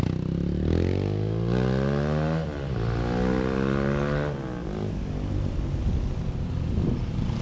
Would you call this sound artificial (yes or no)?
no